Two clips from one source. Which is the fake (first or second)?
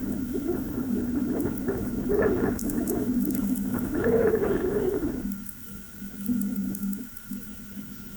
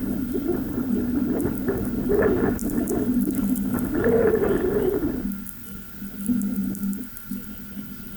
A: first